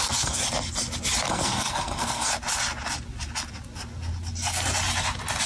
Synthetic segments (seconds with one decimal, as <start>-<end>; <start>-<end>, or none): 0.0-0.4; 1.3-2.3